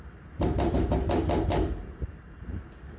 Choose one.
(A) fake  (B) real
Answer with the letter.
A